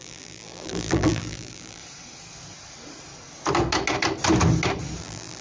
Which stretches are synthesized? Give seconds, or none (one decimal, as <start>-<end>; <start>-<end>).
0.0-1.8; 5.0-5.4